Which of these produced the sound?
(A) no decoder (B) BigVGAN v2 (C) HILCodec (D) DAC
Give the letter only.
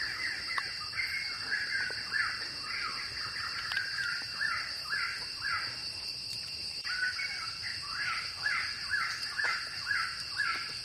B